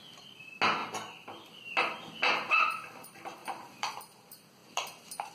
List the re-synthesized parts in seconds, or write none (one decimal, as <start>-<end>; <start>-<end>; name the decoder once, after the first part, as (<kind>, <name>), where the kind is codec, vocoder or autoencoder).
3.4-3.9 (vocoder, BigVGAN v2); 4.6-5.3